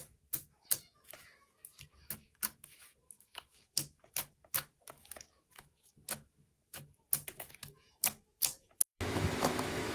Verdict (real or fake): fake